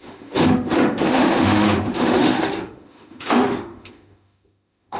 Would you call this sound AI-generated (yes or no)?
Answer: yes